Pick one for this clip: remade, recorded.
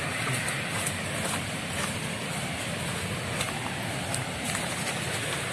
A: recorded